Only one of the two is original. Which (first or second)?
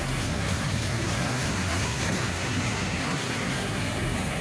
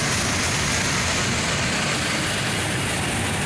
second